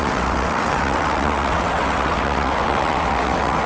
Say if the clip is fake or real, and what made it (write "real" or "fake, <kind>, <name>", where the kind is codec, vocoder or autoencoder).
fake, vocoder, WaveNeXt